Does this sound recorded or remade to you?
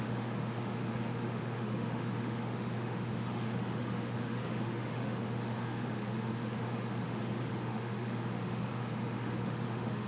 remade